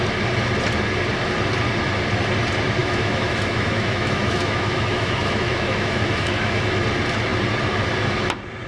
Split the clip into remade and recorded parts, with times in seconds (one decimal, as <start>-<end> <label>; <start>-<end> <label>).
0.0-2.8 recorded; 2.8-6.8 remade; 6.8-8.7 recorded